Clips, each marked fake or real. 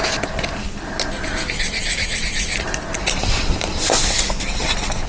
real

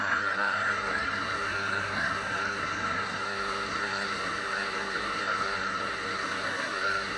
fake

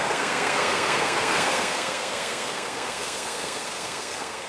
fake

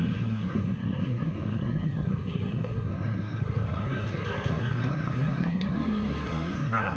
fake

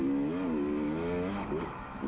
real